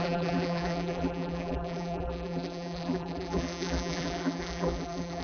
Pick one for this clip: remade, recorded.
remade